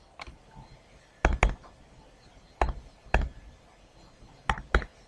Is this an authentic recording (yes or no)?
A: yes